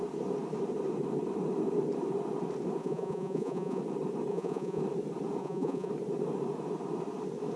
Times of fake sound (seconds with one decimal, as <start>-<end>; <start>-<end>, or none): 2.8-3.8; 4.3-4.8; 5.4-5.9